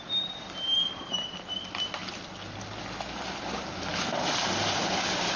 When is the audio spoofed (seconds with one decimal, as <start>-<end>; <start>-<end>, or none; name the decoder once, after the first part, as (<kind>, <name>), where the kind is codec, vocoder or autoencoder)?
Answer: none

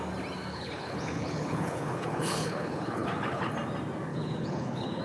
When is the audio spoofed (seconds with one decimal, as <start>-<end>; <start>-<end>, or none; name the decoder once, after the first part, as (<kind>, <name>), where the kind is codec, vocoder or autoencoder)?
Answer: 0.5-3.5 (codec, HILCodec); 4.1-5.0

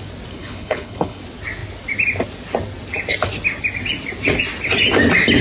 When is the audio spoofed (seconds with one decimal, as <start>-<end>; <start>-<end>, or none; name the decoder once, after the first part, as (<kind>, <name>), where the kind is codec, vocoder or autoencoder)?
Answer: 0.4-1.2 (codec, HILCodec)